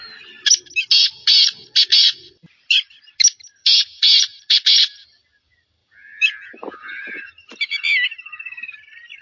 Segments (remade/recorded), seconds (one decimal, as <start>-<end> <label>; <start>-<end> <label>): 0.0-5.8 recorded; 5.8-7.2 remade; 7.2-9.2 recorded